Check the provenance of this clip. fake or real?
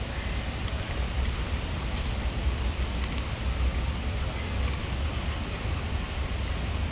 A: real